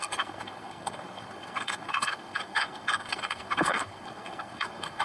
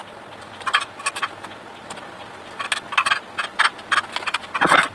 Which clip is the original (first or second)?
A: second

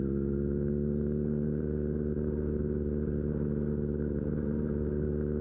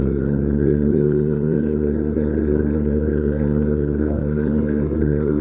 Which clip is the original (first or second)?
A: first